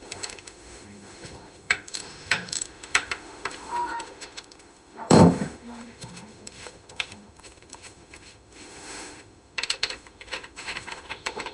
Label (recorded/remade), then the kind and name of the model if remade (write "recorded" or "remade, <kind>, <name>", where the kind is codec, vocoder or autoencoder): remade, autoencoder, DAC-VAE